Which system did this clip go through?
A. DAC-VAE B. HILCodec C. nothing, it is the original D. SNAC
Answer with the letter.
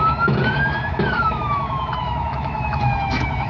A